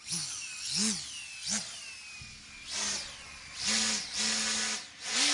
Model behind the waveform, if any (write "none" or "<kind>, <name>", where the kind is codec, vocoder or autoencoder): none